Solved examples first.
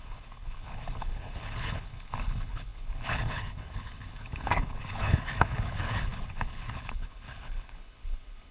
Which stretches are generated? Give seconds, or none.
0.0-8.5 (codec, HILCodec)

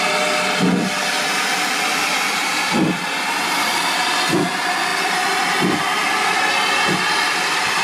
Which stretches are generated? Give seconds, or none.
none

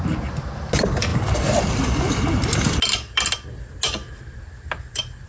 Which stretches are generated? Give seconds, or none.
none

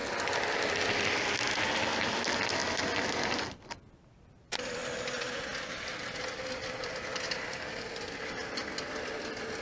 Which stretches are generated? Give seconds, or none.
0.6-9.6 (vocoder, BigVGAN v2)

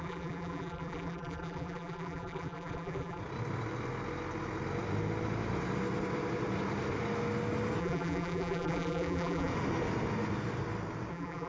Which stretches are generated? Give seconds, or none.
0.0-3.2 (vocoder, BigVGAN v2); 7.8-9.5; 11.1-11.5

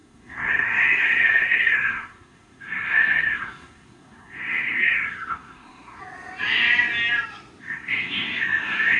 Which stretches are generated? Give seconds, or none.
0.0-6.0 (codec, SNAC); 7.6-9.0

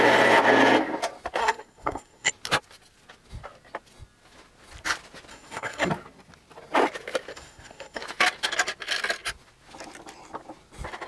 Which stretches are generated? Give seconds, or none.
1.4-2.3 (codec, SNAC); 5.3-5.9; 7.3-8.0